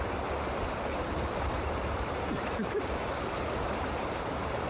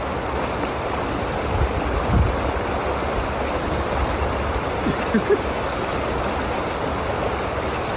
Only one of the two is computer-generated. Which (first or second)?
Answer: first